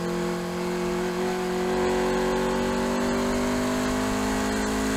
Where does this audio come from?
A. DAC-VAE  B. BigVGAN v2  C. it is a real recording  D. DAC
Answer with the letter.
C